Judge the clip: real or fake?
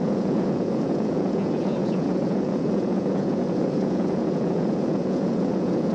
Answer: fake